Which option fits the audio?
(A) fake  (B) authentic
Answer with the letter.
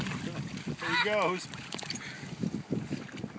B